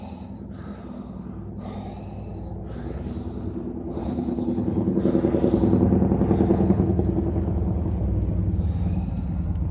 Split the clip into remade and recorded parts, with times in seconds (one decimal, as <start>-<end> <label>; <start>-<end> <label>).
0.0-4.0 recorded; 4.0-5.0 remade; 5.0-6.5 recorded; 6.5-7.1 remade; 7.1-9.7 recorded